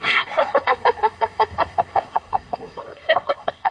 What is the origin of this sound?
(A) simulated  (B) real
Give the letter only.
A